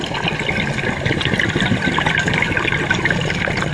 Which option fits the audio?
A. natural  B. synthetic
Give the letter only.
A